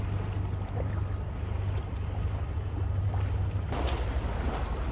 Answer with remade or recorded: recorded